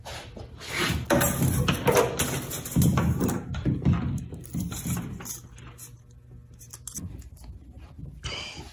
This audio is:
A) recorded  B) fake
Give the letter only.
A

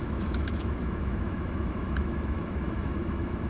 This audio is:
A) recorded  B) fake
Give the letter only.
B